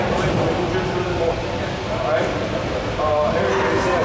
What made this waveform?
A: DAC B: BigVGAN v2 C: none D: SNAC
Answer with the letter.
C